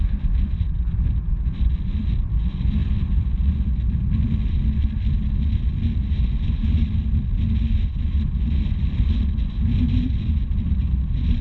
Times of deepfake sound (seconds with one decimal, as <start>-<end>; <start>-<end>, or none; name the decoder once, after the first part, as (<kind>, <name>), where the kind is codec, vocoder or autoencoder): none